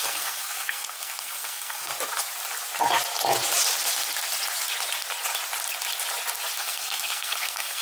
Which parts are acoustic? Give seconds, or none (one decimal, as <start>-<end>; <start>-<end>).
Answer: 1.9-6.6